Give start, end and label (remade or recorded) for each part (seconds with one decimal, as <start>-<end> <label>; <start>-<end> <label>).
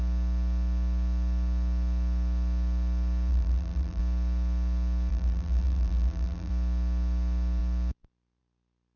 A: 0.0-3.3 recorded; 3.3-4.0 remade; 4.0-5.1 recorded; 5.1-6.5 remade; 6.5-9.0 recorded